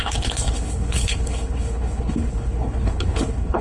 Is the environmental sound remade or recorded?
remade